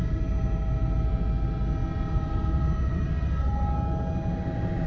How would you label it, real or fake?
real